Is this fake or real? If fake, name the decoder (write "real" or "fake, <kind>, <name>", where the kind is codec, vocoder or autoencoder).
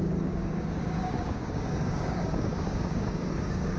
fake, codec, DAC